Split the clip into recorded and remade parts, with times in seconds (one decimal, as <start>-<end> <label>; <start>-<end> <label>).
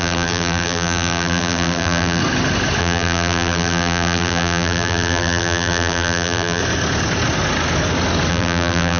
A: 0.0-2.2 remade; 2.2-2.8 recorded; 2.8-6.6 remade; 6.6-8.3 recorded; 8.3-9.0 remade